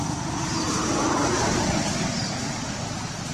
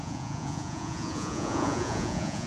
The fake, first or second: second